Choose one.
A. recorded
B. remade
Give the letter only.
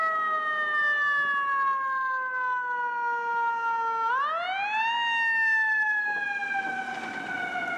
A